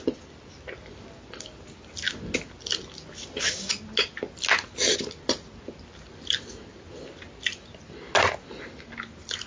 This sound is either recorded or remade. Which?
recorded